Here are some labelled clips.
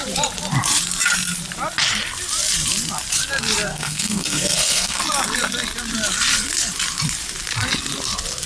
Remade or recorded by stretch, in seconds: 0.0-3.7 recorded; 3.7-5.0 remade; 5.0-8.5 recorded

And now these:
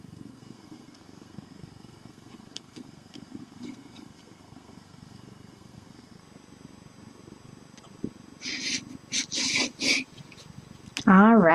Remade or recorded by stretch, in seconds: 0.0-6.2 remade; 6.2-11.5 recorded